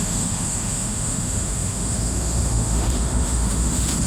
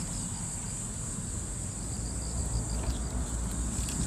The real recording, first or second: second